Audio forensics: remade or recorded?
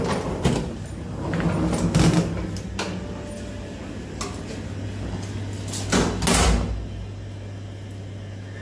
recorded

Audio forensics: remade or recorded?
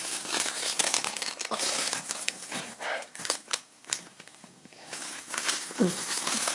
remade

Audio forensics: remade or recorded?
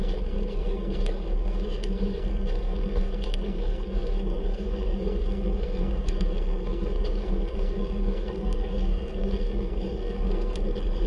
remade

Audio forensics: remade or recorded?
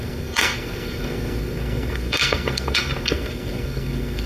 remade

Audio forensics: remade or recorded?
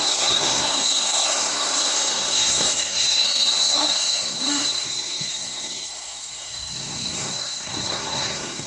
remade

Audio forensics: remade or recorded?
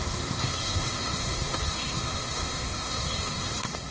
remade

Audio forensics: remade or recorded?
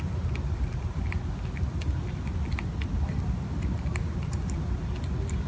recorded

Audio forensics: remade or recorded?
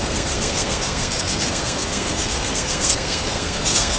remade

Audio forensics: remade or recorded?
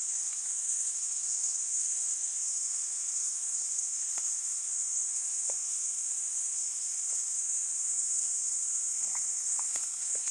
remade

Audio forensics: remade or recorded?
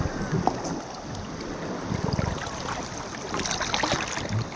recorded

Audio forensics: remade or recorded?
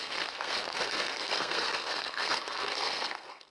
remade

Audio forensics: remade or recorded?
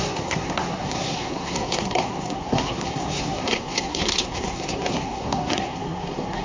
remade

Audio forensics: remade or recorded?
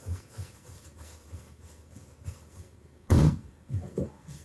remade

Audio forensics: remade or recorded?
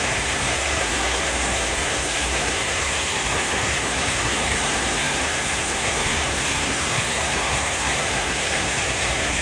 remade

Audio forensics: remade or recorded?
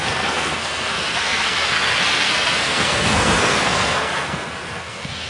remade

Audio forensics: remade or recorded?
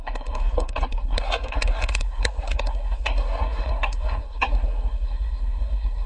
remade